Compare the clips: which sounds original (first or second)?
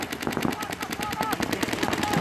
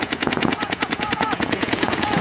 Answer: first